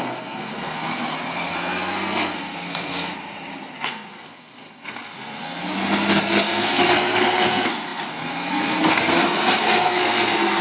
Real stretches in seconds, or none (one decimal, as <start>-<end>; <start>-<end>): 3.1-3.8; 5.6-6.2